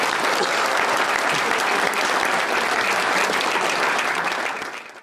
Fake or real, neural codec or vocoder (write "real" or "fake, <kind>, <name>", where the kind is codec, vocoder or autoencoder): real